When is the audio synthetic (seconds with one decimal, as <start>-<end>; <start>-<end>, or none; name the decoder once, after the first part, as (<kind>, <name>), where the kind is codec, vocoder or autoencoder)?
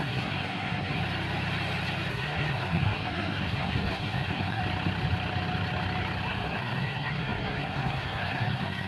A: 0.0-1.0 (codec, SNAC); 2.1-4.6; 6.3-8.9